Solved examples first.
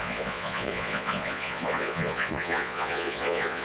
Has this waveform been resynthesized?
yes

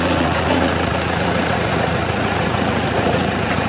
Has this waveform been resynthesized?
yes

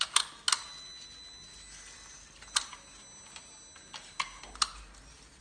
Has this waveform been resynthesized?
no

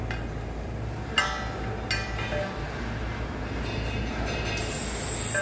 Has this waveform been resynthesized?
no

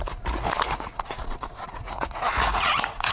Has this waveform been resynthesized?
yes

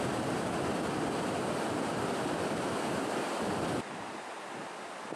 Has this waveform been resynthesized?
no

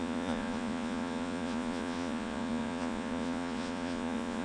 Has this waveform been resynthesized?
yes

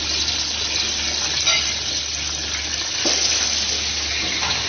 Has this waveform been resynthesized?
no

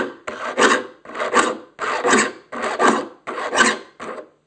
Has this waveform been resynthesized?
no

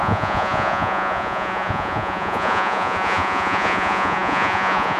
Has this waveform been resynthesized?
yes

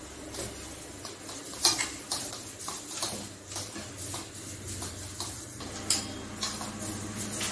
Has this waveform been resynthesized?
no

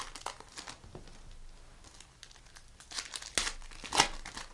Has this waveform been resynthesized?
no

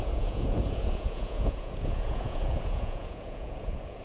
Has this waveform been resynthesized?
yes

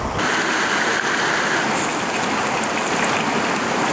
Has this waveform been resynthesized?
no